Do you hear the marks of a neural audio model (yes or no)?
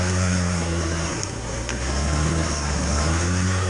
yes